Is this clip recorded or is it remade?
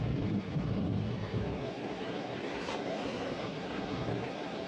remade